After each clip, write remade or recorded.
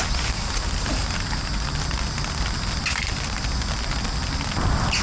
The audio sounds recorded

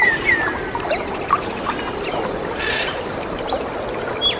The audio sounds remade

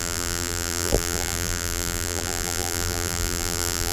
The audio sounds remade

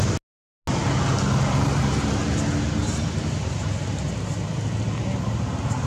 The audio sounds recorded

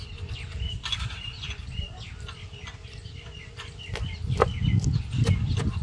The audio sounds recorded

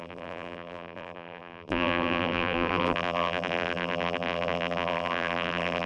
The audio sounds remade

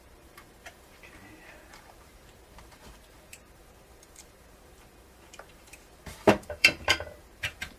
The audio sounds remade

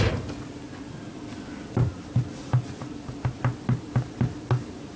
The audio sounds recorded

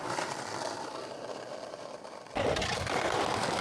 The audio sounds remade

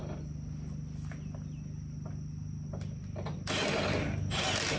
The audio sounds recorded